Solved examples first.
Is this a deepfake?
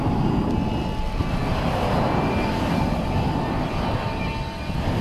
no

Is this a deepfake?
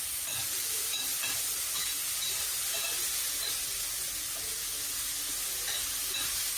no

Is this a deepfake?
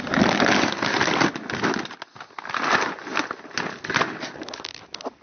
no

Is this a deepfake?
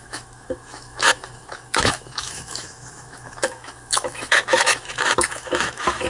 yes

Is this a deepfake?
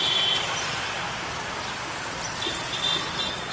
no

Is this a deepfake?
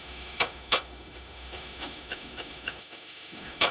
yes